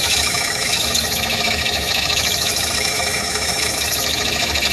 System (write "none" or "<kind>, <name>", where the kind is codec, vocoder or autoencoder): autoencoder, DAC-VAE